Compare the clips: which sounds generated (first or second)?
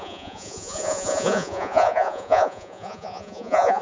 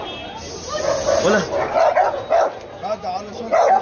first